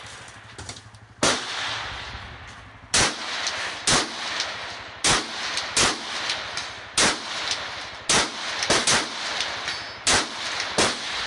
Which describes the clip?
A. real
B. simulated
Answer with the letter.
A